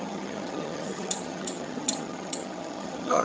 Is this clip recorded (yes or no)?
no